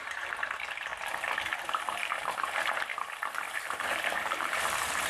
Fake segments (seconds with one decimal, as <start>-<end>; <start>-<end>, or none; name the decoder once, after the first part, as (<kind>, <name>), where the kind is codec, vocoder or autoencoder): 0.0-0.9 (vocoder, BigVGAN v2); 1.5-2.9; 3.4-5.1